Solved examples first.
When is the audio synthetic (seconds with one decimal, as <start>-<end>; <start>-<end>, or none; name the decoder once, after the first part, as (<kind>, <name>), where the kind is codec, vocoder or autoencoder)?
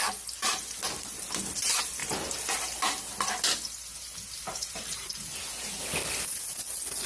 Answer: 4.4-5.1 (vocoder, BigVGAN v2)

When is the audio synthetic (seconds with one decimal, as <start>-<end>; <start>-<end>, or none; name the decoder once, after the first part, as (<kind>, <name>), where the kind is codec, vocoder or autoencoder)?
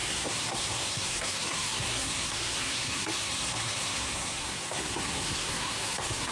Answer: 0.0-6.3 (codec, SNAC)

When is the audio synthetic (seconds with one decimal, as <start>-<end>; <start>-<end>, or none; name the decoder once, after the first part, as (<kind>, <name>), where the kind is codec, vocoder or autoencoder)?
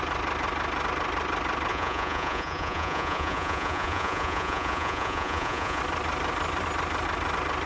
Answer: 1.7-5.8 (vocoder, Vocos)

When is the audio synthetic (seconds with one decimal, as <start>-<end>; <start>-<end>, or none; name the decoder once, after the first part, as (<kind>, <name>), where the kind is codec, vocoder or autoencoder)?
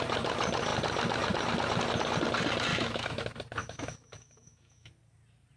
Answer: 2.7-3.2 (autoencoder, DAC-VAE); 3.6-4.9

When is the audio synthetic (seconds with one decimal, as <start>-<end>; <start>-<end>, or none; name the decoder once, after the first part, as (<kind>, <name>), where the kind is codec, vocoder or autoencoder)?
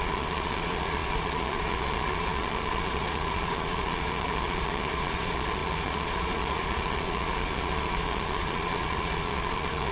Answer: 0.0-9.9 (vocoder, Vocos)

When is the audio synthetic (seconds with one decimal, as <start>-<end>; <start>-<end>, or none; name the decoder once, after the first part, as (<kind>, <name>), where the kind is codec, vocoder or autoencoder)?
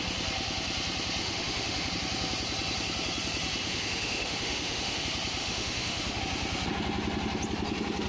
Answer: 1.2-1.9 (autoencoder, DAC-VAE); 3.6-5.0; 5.4-6.2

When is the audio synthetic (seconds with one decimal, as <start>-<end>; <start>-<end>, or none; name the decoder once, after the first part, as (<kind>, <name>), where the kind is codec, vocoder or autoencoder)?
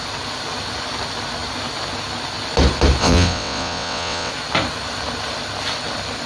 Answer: 3.0-4.3 (vocoder, WaveNeXt)